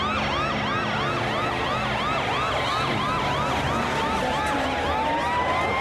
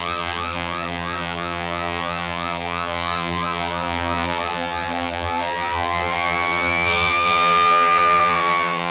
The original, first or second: first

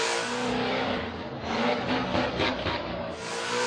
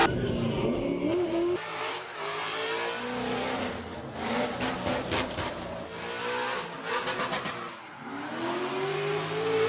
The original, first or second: second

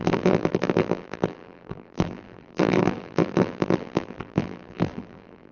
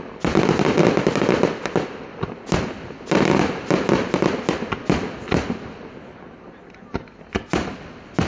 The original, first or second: second